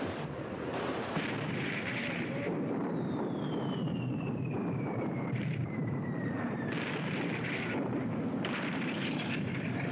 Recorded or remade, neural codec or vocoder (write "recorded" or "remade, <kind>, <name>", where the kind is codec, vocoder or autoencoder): remade, vocoder, BigVGAN v2